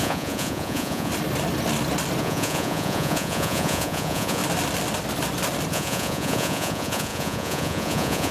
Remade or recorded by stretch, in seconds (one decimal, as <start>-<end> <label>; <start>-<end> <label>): 0.0-1.1 remade; 1.1-2.2 recorded; 2.2-4.4 remade; 4.4-5.7 recorded; 5.7-8.3 remade